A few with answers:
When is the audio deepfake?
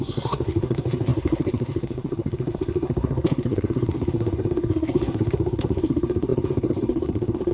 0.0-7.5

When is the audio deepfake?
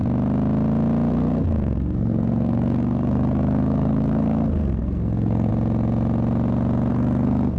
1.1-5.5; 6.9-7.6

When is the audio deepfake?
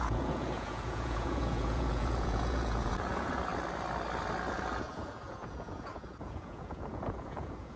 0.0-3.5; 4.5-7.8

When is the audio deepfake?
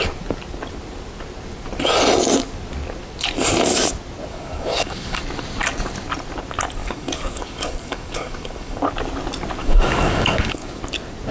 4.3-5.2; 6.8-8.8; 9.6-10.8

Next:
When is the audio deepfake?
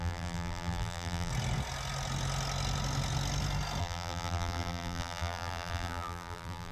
0.0-1.3; 3.8-6.7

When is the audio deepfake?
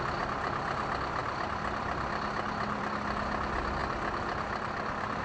none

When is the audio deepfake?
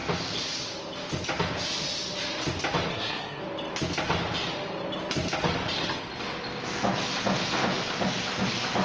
2.9-3.4